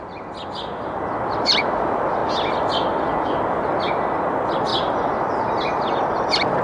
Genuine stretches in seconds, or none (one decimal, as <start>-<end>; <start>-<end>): 0.0-6.6